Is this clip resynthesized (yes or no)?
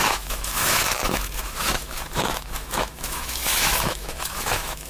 yes